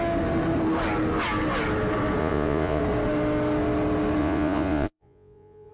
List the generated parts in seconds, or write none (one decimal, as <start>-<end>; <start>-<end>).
2.2-2.8; 4.2-5.7

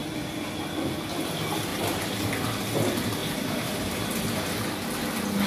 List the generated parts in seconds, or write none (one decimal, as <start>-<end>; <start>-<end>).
1.7-2.3; 3.2-4.2